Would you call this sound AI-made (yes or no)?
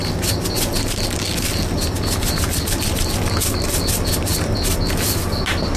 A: no